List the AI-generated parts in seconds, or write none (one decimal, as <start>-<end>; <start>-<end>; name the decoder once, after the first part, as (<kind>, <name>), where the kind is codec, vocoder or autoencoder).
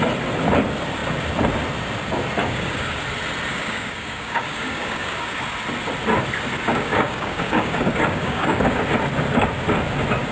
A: 2.4-3.0 (codec, DAC); 3.5-5.4; 6.7-8.8